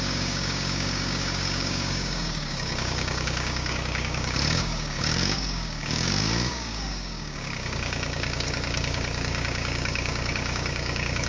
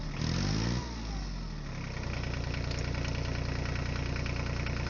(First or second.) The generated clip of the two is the first